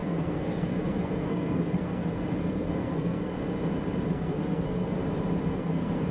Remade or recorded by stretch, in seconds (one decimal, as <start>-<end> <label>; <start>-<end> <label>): 0.0-3.3 remade; 3.3-4.0 recorded; 4.0-5.0 remade; 5.0-5.5 recorded; 5.5-6.1 remade